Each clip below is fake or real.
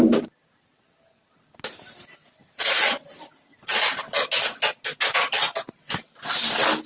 real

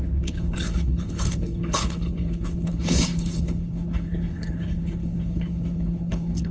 fake